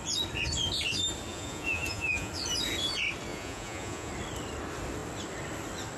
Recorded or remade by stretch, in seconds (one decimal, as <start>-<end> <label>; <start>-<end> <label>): 0.0-1.3 recorded; 1.3-2.3 remade; 2.3-3.3 recorded; 3.3-4.1 remade; 4.1-6.0 recorded